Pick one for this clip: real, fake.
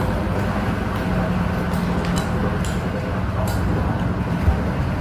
real